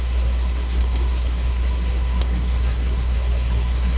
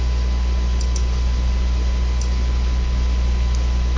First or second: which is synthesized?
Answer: first